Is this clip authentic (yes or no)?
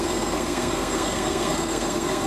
no